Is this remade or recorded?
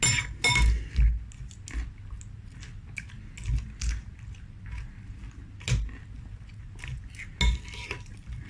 recorded